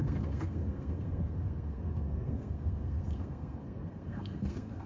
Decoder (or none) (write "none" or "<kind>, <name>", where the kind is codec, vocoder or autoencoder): codec, SNAC